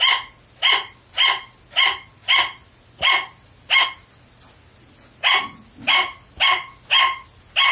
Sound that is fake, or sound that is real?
real